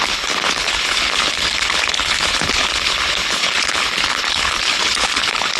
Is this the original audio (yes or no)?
no